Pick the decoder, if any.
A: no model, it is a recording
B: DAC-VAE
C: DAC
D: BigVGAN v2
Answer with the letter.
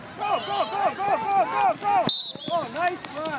A